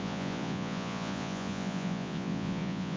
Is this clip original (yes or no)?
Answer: no